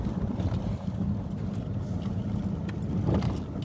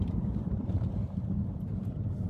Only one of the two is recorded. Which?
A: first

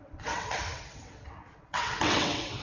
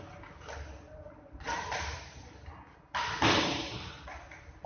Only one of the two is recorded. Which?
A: second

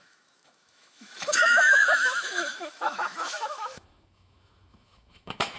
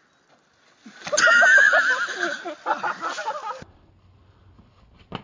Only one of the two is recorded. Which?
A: second